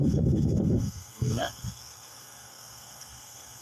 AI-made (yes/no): yes